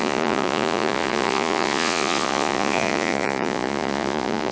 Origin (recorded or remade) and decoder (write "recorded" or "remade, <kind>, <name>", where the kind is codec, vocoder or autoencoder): remade, vocoder, Vocos